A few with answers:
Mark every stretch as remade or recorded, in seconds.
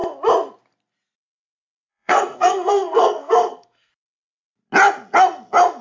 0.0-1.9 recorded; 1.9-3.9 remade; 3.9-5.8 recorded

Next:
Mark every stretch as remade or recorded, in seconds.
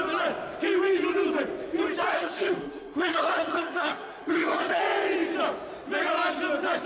0.0-2.1 recorded; 2.1-4.8 remade; 4.8-6.9 recorded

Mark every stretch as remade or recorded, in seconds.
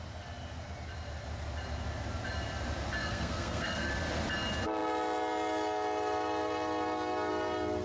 0.0-3.0 recorded; 3.0-3.9 remade; 3.9-7.8 recorded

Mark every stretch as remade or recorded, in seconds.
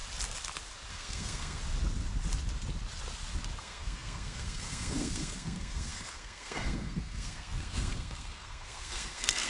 0.0-0.9 recorded; 0.9-1.6 remade; 1.6-3.6 recorded; 3.6-9.5 remade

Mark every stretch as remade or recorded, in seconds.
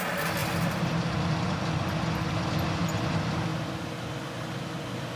0.0-5.2 recorded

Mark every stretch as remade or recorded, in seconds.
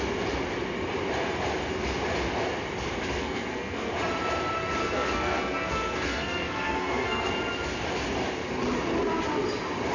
0.0-3.2 recorded; 3.2-3.9 remade; 3.9-4.8 recorded; 4.8-7.3 remade; 7.3-9.9 recorded